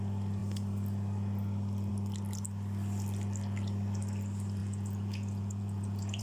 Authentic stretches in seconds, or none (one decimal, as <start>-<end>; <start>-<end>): 0.0-4.6